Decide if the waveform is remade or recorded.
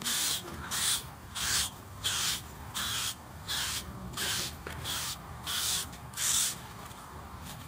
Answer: remade